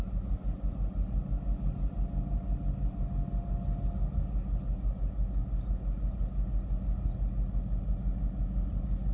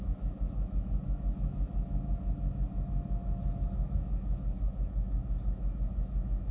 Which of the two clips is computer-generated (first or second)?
second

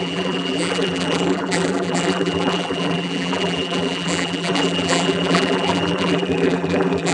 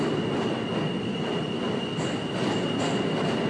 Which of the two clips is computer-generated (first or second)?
first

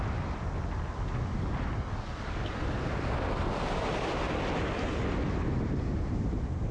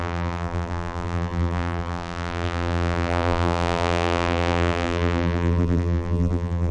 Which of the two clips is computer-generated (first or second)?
second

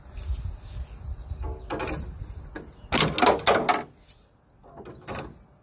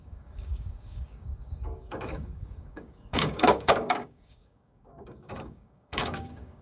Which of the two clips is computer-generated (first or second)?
second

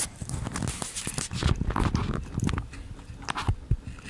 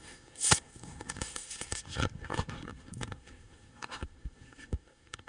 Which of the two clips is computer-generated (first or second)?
second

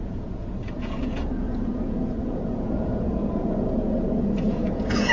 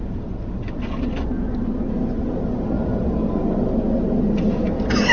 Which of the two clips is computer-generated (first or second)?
first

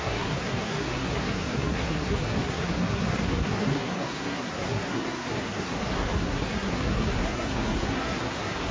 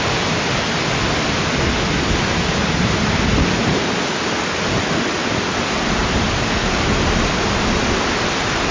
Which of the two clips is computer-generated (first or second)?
first